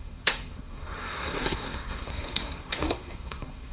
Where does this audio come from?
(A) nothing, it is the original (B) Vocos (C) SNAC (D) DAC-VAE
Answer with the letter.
C